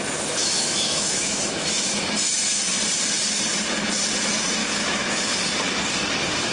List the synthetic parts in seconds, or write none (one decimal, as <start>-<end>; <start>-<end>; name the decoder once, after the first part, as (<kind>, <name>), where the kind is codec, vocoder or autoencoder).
0.4-2.0 (autoencoder, DAC-VAE); 4.6-5.4